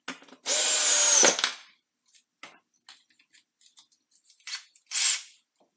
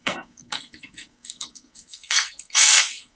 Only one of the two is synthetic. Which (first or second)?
second